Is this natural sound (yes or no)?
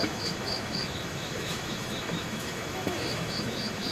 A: no